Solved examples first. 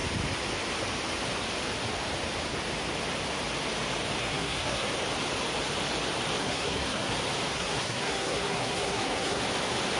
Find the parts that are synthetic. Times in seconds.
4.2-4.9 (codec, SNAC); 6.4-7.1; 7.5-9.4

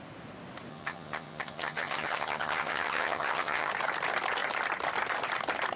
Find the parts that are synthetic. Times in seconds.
0.7-3.7 (vocoder, HiFi-GAN)

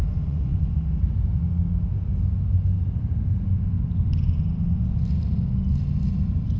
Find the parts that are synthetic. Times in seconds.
0.0-0.6 (vocoder, Vocos)

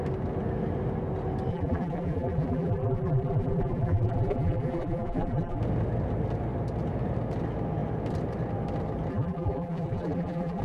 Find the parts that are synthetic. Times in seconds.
1.5-5.6 (vocoder, BigVGAN v2); 9.1-10.6

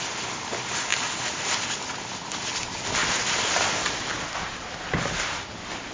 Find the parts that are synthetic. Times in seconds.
none

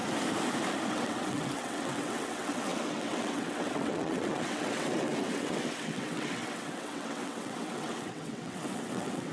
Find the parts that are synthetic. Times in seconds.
0.9-9.3 (vocoder, WaveNeXt)

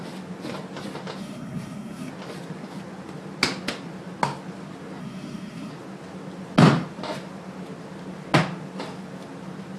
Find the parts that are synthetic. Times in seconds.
1.2-2.1 (codec, SNAC); 5.0-5.7